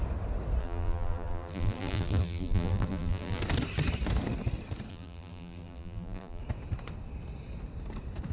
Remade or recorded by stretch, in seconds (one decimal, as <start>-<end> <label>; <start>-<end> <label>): 0.0-0.6 recorded; 0.6-3.4 remade; 3.4-4.9 recorded; 4.9-6.4 remade; 6.4-8.3 recorded